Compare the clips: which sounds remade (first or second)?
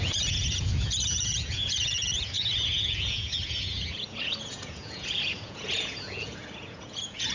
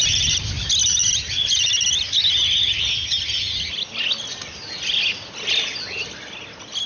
first